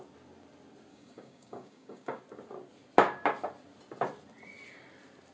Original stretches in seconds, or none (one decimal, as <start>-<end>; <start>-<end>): 0.0-0.9; 2.2-5.3